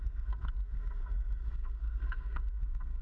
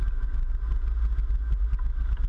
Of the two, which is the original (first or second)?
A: second